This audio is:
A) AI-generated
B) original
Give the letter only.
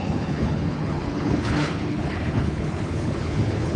A